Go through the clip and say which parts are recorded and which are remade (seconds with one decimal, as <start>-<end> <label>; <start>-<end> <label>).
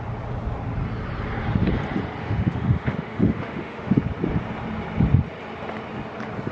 0.0-2.2 recorded; 2.2-3.9 remade; 3.9-6.5 recorded